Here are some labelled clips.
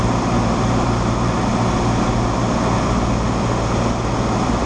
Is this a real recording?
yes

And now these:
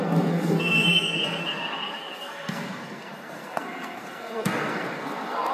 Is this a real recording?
no